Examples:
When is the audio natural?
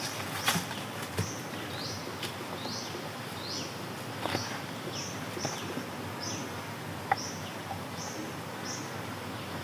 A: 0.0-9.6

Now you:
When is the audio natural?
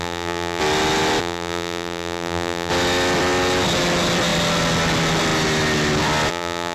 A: 0.6-1.2; 2.7-6.3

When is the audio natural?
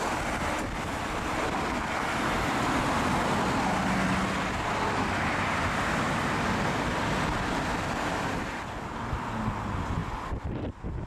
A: 0.0-11.1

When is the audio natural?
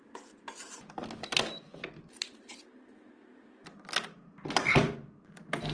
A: 0.0-1.7; 2.6-5.7